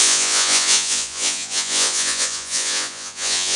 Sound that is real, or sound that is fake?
fake